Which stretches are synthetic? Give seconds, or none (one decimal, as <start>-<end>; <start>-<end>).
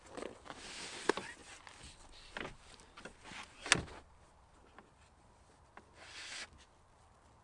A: none